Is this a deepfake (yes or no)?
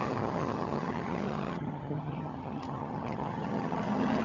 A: yes